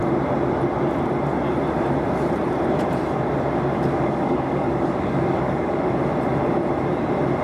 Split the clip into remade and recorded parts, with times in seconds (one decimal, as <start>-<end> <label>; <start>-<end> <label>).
0.0-3.9 recorded; 3.9-5.9 remade; 5.9-7.4 recorded